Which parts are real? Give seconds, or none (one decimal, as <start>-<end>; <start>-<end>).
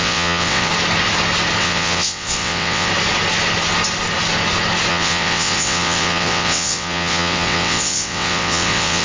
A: 0.7-1.6; 2.9-4.9